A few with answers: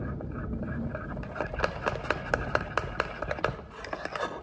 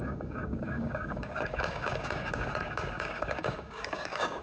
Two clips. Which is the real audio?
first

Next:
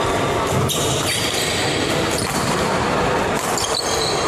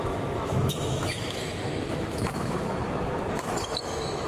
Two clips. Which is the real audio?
first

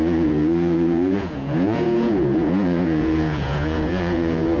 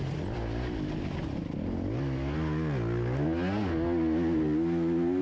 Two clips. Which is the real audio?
second